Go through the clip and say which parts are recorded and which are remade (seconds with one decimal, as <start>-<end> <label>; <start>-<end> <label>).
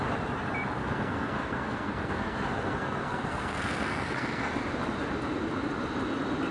0.0-0.8 recorded; 0.8-4.5 remade; 4.5-6.5 recorded